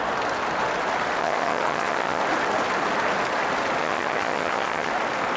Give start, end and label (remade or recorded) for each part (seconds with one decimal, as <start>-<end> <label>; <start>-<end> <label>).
0.0-1.2 recorded; 1.2-2.2 remade; 2.2-3.8 recorded; 3.8-4.9 remade; 4.9-5.4 recorded